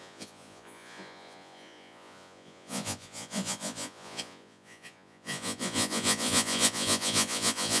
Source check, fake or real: fake